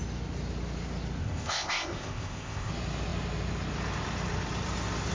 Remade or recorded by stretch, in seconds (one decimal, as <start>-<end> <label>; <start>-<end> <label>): 0.0-1.2 recorded; 1.2-2.7 remade; 2.7-5.1 recorded